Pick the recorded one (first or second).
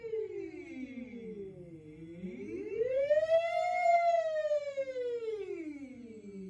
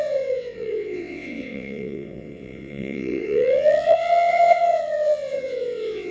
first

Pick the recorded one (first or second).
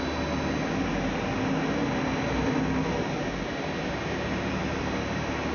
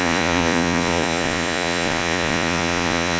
first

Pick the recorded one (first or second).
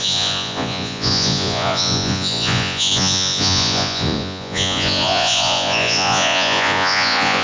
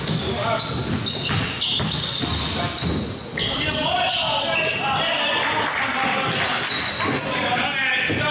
second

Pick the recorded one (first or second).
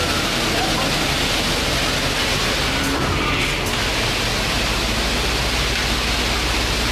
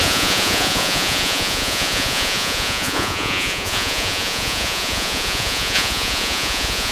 first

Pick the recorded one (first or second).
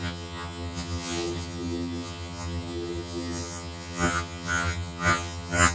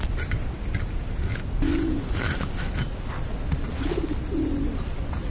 second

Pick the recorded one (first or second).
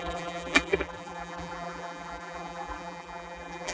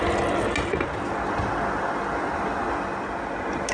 second